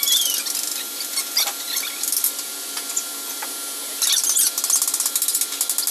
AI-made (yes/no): no